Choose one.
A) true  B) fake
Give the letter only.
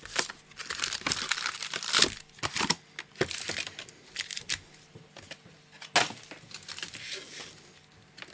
A